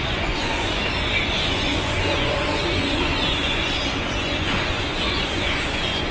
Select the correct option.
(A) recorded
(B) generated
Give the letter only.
B